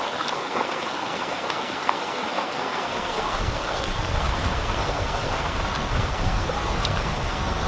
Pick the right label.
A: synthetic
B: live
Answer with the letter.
A